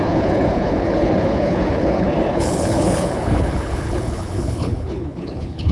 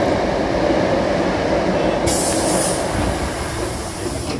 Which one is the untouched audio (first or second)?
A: second